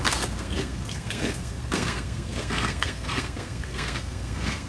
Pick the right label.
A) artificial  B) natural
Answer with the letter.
A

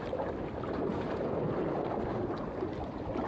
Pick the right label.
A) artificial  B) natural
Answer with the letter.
B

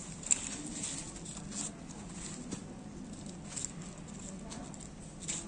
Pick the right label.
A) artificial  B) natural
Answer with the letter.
B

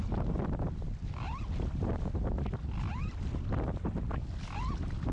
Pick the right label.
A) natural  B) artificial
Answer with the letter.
A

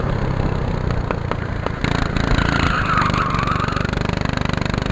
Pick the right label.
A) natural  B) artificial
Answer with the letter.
A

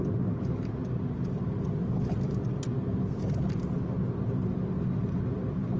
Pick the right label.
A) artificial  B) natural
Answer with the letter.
B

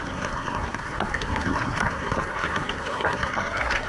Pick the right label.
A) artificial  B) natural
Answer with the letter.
A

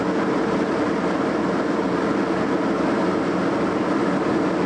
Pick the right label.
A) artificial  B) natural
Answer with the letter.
B